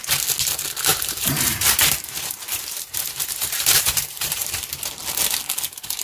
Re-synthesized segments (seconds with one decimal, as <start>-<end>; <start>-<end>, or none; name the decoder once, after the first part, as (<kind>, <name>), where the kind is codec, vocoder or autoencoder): 0.9-4.5 (vocoder, BigVGAN v2)